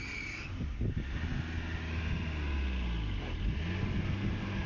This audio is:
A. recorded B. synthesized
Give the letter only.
A